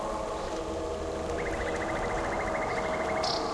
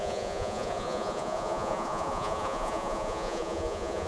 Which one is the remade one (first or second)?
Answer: second